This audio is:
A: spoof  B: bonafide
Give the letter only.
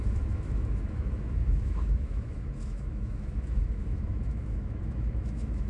A